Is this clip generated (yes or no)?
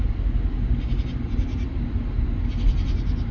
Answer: no